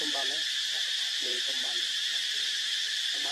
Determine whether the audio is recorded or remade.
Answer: remade